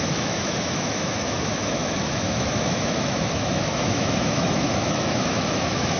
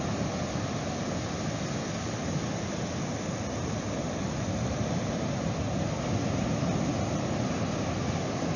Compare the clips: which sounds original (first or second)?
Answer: second